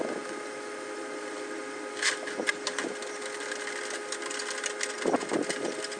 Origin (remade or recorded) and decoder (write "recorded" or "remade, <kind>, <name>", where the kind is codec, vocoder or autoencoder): recorded